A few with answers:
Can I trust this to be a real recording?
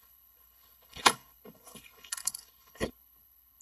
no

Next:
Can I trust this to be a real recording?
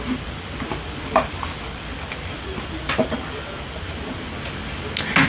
yes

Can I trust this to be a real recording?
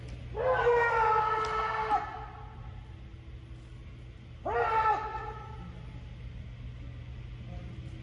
yes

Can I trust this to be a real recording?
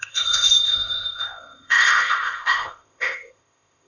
no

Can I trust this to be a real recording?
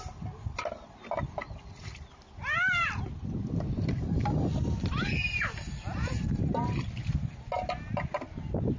yes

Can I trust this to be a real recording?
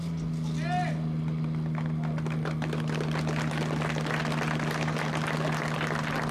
yes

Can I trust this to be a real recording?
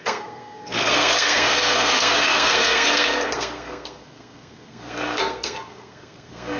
no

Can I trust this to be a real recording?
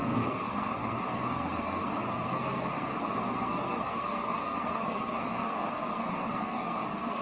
no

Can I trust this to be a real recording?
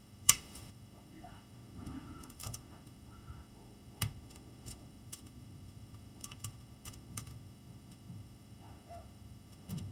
no